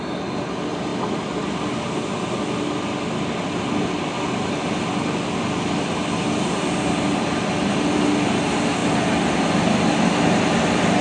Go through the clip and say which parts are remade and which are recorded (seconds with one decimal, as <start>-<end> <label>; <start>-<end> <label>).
0.0-11.0 recorded